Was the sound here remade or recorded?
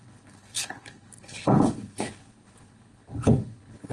remade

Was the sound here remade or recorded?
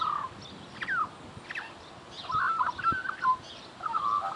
recorded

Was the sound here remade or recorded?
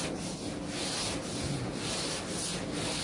recorded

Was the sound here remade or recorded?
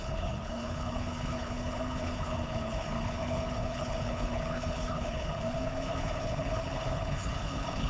remade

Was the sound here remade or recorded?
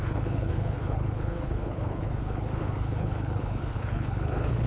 remade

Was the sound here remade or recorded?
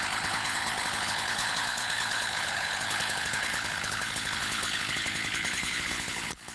remade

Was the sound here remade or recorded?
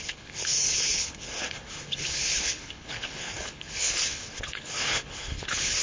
remade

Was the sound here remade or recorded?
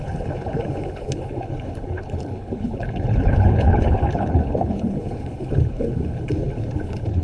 remade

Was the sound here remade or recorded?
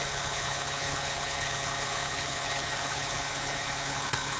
remade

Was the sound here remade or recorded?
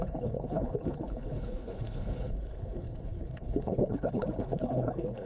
remade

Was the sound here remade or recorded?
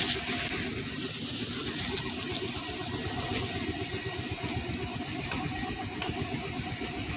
recorded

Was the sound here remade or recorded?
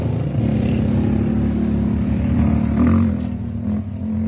recorded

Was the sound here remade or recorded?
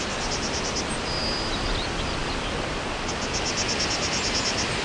recorded